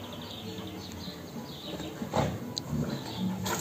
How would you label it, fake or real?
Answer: real